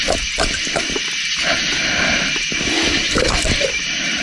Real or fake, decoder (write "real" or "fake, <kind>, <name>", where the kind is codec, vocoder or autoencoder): real